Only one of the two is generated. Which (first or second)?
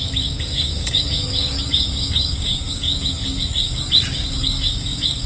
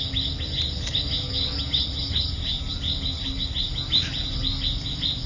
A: first